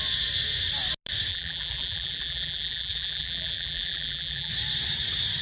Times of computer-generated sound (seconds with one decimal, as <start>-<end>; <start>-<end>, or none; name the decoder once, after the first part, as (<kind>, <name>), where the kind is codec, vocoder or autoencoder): 1.3-4.5 (vocoder, BigVGAN v2)